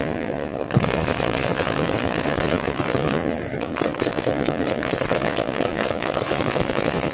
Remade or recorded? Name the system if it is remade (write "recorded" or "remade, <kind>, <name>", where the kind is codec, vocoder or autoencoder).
remade, vocoder, Vocos